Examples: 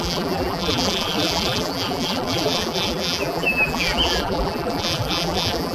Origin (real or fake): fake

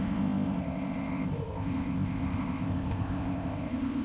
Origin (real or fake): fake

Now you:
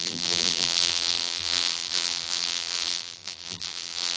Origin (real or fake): fake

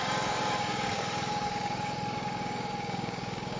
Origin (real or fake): fake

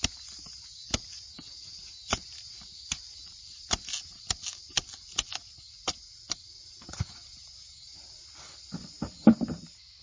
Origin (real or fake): real